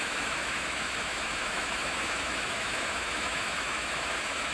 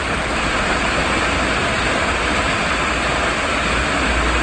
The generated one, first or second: first